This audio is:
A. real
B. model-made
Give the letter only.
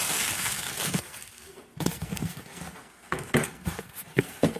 B